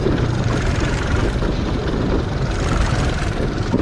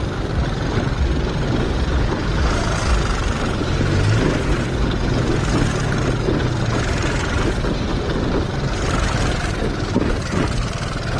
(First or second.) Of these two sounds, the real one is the second